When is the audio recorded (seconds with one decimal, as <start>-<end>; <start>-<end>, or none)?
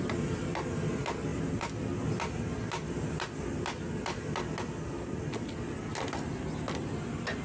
0.0-7.4